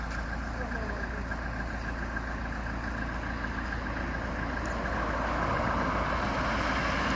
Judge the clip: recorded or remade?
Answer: recorded